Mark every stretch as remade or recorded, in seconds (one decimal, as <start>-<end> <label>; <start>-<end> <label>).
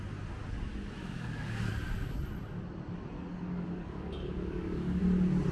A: 0.0-1.0 recorded; 1.0-1.7 remade; 1.7-3.3 recorded; 3.3-5.0 remade; 5.0-5.5 recorded